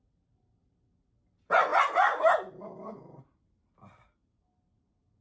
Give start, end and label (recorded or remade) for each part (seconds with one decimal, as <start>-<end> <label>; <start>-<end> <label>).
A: 0.0-5.2 recorded